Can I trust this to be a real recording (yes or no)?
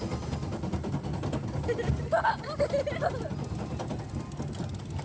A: yes